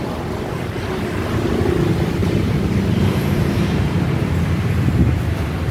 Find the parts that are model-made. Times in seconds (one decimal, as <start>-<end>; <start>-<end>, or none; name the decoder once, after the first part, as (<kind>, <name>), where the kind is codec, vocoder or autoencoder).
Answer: 2.2-5.2 (vocoder, BigVGAN v2)